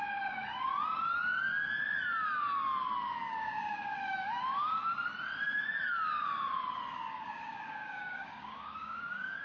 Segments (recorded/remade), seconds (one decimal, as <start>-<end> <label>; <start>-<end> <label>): 0.0-0.7 remade; 0.7-3.3 recorded; 3.3-4.8 remade; 4.8-6.9 recorded; 6.9-9.4 remade